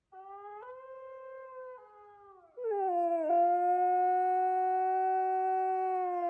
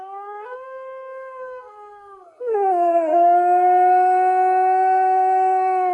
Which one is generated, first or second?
second